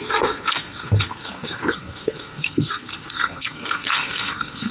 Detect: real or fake fake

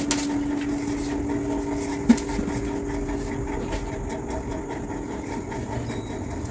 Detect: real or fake real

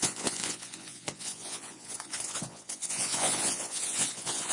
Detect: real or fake fake